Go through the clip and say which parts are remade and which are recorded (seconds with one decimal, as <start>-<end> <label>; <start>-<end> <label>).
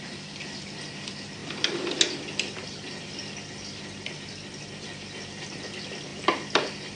0.0-7.0 recorded